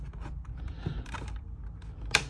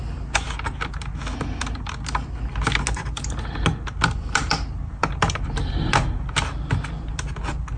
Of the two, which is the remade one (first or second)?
first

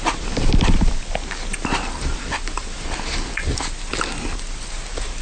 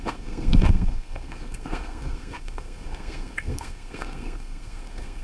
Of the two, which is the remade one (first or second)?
second